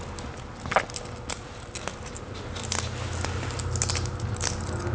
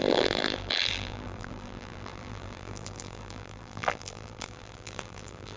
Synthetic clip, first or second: second